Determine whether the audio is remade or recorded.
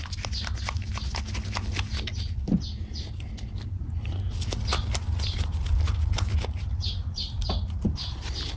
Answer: recorded